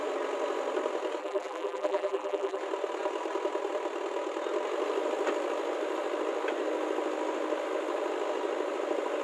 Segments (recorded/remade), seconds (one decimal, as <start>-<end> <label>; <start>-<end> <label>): 0.0-1.2 recorded; 1.2-2.6 remade; 2.6-9.2 recorded